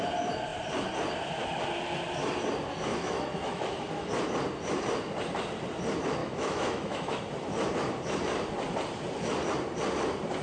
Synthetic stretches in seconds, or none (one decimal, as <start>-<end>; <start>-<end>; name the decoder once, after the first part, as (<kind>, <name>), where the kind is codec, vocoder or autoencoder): 2.9-4.1 (autoencoder, DAC-VAE); 6.2-7.2